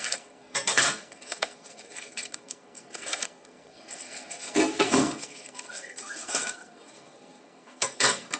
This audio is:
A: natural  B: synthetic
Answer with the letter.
B